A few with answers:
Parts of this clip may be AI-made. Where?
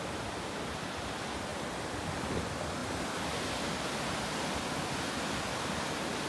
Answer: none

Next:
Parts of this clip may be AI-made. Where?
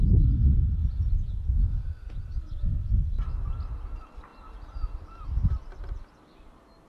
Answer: none